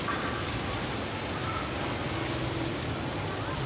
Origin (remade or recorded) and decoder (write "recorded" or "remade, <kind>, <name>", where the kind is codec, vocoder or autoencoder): recorded